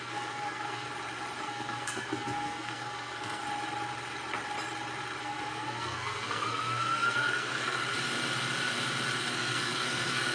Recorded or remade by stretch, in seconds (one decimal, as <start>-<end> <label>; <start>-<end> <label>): 0.0-0.9 remade; 0.9-1.4 recorded; 1.4-3.4 remade; 3.4-5.2 recorded; 5.2-7.8 remade; 7.8-9.2 recorded; 9.2-10.3 remade